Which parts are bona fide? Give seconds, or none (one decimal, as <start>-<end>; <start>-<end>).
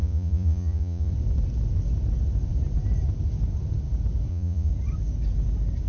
1.1-4.3; 4.7-5.9